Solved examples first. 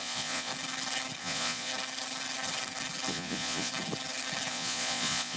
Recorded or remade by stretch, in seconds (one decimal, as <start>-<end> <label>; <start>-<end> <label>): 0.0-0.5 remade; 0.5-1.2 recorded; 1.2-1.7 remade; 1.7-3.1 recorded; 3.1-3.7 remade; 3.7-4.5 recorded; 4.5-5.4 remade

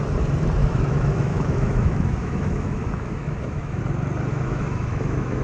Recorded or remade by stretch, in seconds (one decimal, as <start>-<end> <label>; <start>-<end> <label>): 0.0-0.6 recorded; 0.6-3.8 remade; 3.8-4.3 recorded; 4.3-5.4 remade

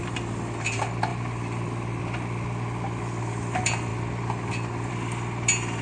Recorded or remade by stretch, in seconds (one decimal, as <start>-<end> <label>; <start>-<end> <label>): 0.0-5.8 recorded

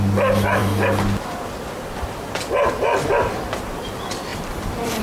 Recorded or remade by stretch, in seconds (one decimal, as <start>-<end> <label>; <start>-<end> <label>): 0.0-4.3 recorded; 4.3-5.0 remade